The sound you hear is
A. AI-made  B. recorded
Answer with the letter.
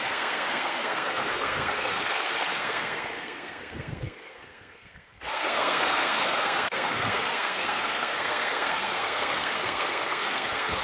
A